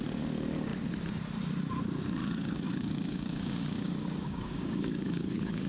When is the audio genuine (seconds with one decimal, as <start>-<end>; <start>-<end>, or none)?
0.0-2.2